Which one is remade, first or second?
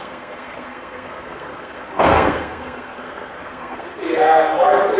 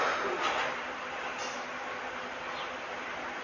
first